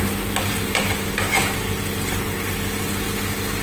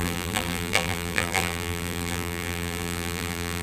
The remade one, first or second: second